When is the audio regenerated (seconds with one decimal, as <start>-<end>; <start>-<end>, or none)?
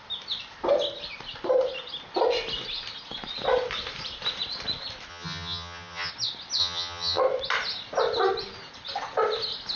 5.1-6.1; 6.6-7.2